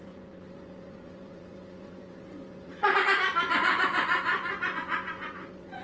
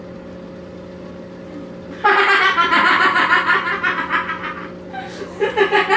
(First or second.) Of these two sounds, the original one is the second